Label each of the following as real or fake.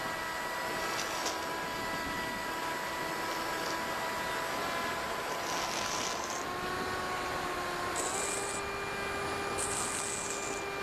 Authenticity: real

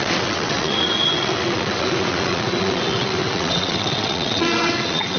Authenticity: fake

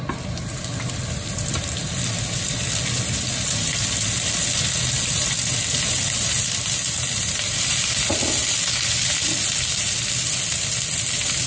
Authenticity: real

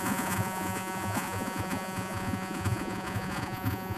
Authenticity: fake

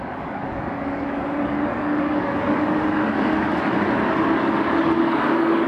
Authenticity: fake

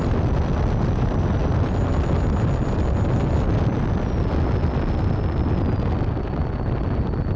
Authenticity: real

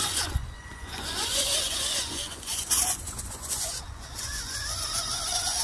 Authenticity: fake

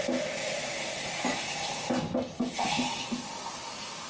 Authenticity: real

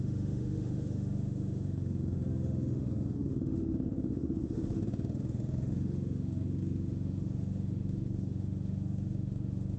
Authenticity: fake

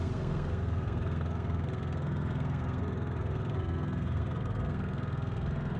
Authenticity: fake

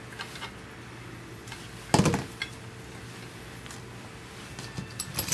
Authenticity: real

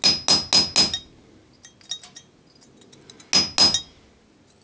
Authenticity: real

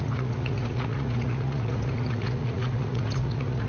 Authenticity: fake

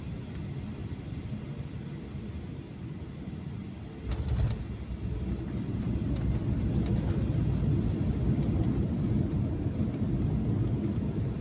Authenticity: real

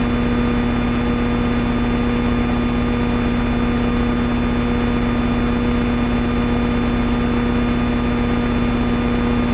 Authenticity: real